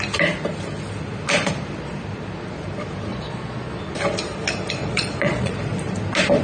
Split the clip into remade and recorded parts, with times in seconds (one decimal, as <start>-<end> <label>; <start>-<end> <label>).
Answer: 0.0-3.1 recorded; 3.1-3.8 remade; 3.8-4.8 recorded; 4.8-5.5 remade; 5.5-6.4 recorded